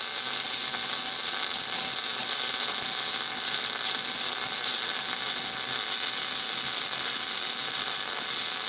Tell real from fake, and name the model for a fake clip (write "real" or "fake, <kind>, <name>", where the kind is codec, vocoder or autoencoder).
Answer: real